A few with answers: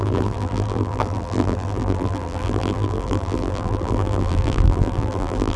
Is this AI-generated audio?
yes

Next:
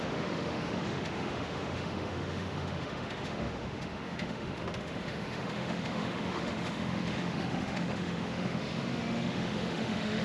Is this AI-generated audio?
yes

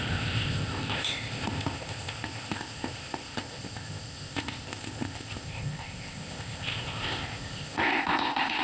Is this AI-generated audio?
yes